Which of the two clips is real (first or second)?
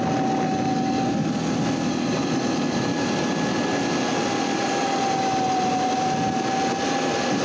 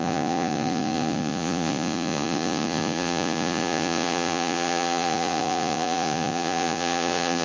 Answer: first